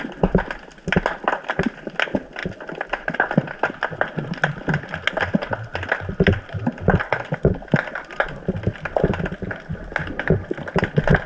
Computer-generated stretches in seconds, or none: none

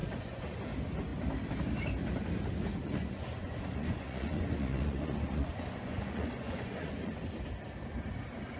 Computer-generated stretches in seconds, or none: 0.0-0.7 (vocoder, Vocos); 2.8-7.2

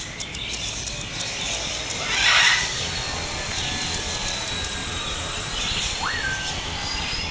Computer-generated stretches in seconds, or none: 2.5-3.1 (vocoder, BigVGAN v2); 4.8-5.5

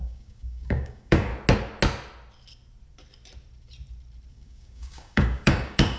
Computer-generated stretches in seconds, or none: 0.0-1.3 (codec, DAC); 4.3-6.0

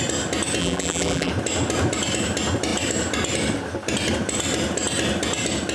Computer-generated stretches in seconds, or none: 0.6-1.3 (vocoder, BigVGAN v2)

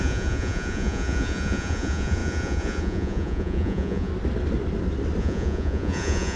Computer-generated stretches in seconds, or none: 0.0-4.1 (vocoder, Vocos); 5.2-6.4